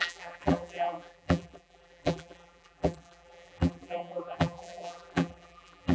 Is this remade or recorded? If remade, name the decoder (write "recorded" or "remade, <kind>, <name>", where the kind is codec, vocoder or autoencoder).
remade, vocoder, BigVGAN v2